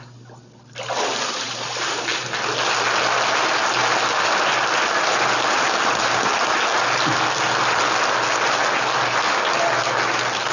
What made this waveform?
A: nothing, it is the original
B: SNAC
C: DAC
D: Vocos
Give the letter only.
A